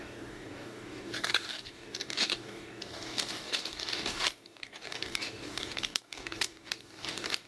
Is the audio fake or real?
fake